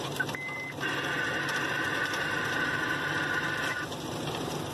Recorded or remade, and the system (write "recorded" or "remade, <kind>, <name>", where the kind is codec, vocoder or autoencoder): recorded